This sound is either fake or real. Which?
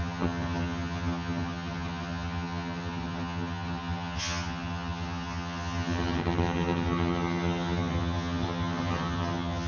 fake